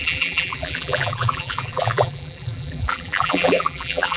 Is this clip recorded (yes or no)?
no